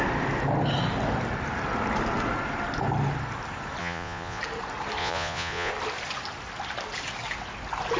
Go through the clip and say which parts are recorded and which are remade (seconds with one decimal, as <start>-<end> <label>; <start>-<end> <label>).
0.0-3.8 recorded; 3.8-4.4 remade; 4.4-5.0 recorded; 5.0-5.7 remade; 5.7-8.0 recorded